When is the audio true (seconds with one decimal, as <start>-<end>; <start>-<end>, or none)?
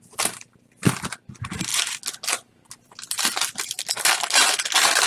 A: 0.0-5.1